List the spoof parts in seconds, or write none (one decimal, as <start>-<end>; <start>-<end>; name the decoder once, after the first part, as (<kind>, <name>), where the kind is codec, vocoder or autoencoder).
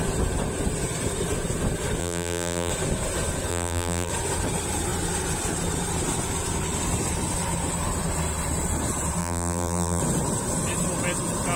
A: 2.0-2.7 (vocoder, BigVGAN v2); 3.5-4.1; 9.2-10.0